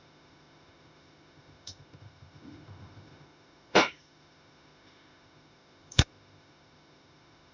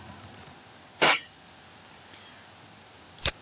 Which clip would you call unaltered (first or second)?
second